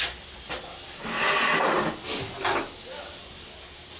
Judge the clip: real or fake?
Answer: real